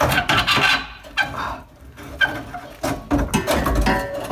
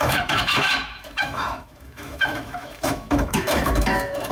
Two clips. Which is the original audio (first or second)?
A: first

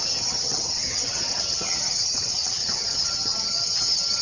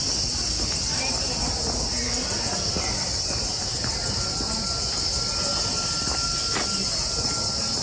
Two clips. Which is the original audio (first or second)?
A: second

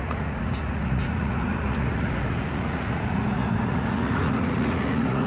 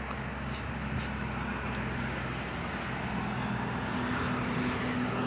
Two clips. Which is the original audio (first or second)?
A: second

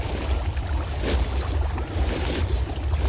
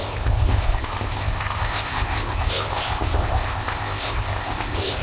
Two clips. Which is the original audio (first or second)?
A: first